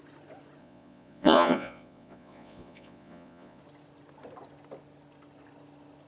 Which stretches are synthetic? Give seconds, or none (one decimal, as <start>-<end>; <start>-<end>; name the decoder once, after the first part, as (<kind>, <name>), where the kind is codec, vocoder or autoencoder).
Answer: 0.6-3.6 (vocoder, Vocos)